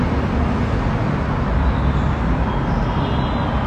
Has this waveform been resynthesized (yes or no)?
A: no